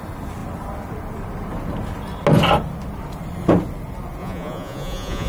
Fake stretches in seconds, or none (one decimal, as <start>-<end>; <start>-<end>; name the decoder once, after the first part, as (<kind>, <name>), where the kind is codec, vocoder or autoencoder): 4.2-5.3 (vocoder, Vocos)

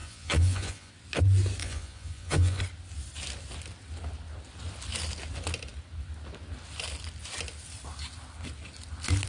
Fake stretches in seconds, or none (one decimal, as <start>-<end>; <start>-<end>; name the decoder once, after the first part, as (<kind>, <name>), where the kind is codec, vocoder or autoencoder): 0.0-0.9 (vocoder, Vocos); 1.6-2.6

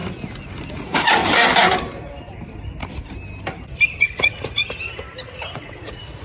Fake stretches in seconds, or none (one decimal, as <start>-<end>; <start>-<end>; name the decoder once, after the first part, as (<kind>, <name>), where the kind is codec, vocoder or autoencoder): 0.7-1.2 (vocoder, Vocos); 4.0-4.6; 5.2-6.2

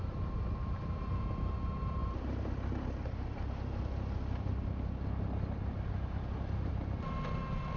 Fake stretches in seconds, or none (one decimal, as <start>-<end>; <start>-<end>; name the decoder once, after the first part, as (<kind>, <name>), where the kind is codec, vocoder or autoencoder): none

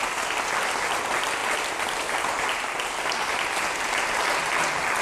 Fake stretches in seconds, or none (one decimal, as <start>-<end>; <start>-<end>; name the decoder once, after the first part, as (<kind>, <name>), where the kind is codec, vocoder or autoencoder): none

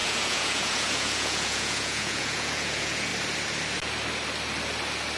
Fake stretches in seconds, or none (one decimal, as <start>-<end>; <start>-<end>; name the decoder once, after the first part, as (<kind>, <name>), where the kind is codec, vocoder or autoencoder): 0.0-3.1 (vocoder, Vocos)